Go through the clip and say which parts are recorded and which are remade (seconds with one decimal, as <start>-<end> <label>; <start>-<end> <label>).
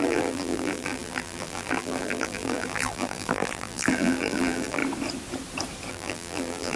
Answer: 0.0-4.8 remade; 4.8-5.9 recorded; 5.9-6.8 remade